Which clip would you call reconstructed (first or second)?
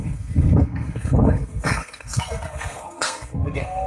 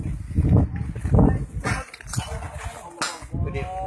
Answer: first